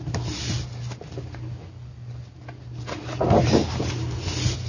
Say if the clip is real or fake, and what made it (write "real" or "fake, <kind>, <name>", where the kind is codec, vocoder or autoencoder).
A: real